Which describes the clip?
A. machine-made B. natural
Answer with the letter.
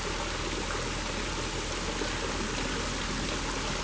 B